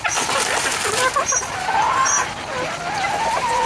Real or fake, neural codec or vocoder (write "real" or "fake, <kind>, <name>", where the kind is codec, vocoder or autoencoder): real